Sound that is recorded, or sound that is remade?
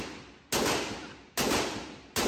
recorded